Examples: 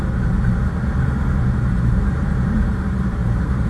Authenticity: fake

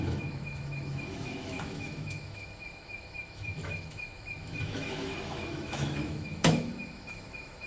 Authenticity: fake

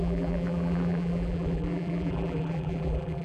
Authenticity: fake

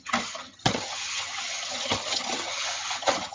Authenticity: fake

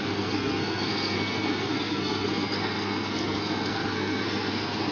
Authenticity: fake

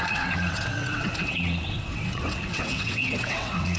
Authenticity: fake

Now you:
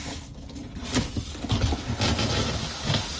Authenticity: real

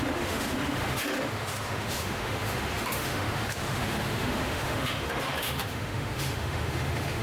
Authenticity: fake